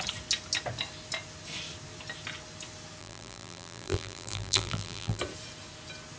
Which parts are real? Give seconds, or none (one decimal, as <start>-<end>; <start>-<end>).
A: 0.0-3.0; 5.2-6.2